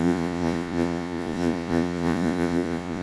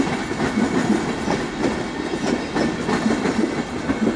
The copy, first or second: first